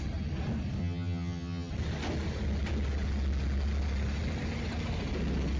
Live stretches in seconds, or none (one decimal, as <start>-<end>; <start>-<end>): 0.0-0.8; 1.7-5.6